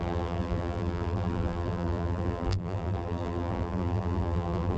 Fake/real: fake